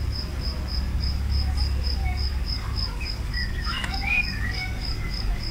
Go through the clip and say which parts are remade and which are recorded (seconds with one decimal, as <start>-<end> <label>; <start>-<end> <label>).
0.0-0.9 recorded; 0.9-1.5 remade; 1.5-2.0 recorded; 2.0-5.5 remade